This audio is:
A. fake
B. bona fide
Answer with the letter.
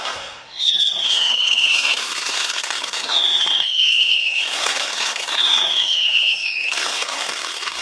A